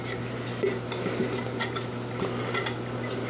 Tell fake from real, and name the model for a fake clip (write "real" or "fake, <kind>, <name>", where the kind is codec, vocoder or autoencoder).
real